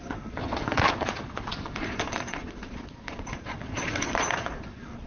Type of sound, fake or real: fake